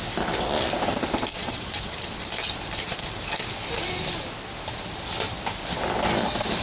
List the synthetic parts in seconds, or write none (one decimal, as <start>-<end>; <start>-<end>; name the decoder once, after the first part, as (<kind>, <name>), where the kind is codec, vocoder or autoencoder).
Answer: 1.3-1.8 (vocoder, WaveNeXt)